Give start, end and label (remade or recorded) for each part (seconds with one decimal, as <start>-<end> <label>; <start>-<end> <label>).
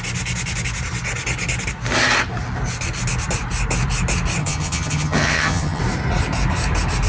0.0-4.4 recorded; 4.4-5.8 remade; 5.8-7.1 recorded